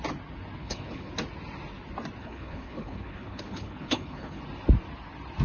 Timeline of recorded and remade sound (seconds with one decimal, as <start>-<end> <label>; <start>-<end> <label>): 0.0-0.6 recorded; 0.6-1.1 remade; 1.1-2.2 recorded; 2.2-4.4 remade; 4.4-5.4 recorded